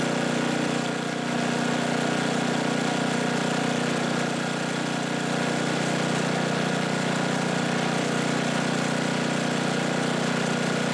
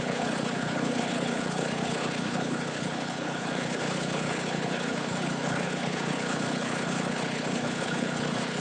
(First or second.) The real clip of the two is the first